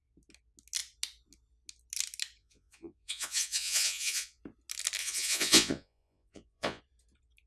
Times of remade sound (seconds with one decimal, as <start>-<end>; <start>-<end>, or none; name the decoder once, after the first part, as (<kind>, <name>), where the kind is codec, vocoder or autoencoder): 2.4-4.4 (vocoder, Vocos); 5.0-6.8